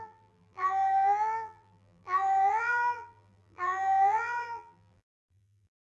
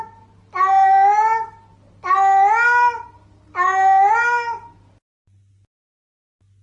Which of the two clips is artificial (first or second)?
first